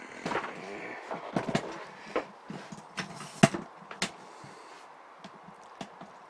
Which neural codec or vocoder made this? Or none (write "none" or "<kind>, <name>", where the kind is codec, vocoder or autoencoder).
none